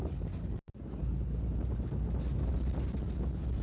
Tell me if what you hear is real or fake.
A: real